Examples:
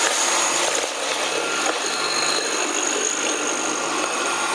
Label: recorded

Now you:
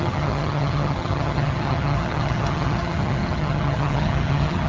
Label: remade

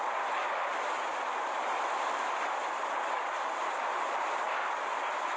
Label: recorded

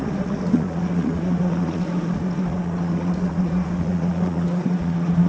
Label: remade